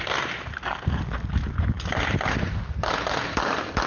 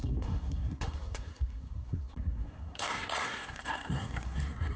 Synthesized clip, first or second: second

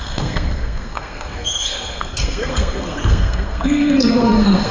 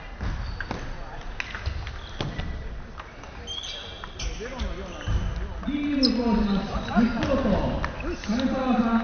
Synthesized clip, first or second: first